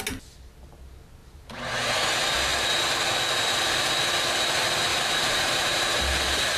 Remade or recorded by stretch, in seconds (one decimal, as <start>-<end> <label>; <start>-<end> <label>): 0.0-4.9 recorded; 4.9-6.0 remade; 6.0-6.6 recorded